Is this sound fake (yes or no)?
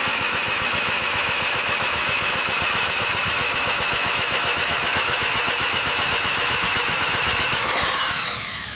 yes